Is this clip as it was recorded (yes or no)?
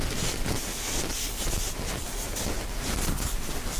yes